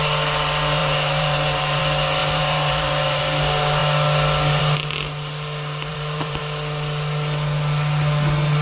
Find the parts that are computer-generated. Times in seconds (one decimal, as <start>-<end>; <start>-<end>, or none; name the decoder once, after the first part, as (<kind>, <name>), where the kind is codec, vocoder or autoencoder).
0.8-1.8 (vocoder, BigVGAN v2); 2.2-3.2; 5.9-6.4